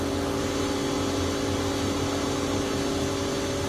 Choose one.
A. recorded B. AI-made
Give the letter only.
A